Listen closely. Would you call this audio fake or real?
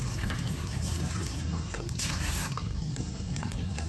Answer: fake